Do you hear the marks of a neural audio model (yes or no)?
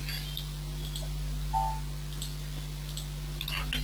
no